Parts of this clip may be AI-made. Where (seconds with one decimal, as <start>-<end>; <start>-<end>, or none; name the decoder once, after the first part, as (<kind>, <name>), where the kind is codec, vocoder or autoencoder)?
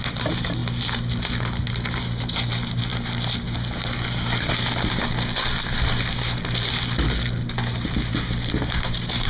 none